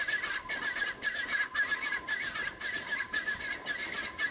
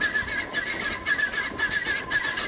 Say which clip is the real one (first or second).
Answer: second